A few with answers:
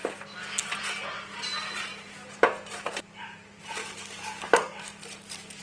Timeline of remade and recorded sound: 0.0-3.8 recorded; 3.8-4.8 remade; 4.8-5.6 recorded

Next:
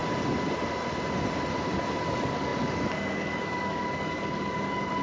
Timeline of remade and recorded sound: 0.0-2.1 recorded; 2.1-5.0 remade

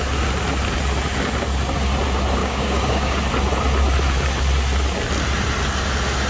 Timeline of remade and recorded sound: 0.0-2.4 recorded; 2.4-3.2 remade; 3.2-6.3 recorded

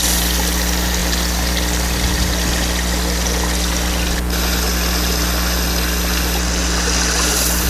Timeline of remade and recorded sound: 0.0-7.7 recorded